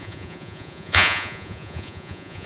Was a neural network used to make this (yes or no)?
yes